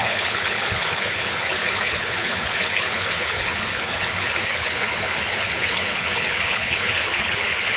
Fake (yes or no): yes